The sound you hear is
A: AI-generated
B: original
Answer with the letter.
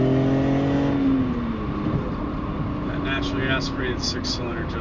B